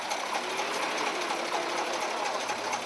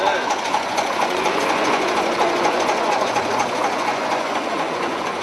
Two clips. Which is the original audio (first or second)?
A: first